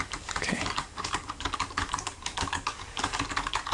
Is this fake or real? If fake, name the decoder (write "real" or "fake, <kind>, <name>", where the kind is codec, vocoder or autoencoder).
fake, codec, DAC